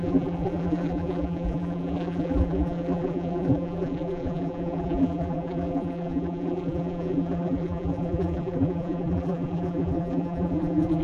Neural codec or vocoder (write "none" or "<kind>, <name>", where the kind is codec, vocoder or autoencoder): vocoder, BigVGAN v2